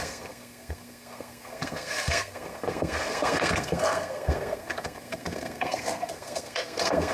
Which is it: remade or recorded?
remade